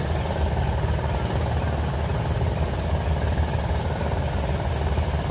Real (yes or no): yes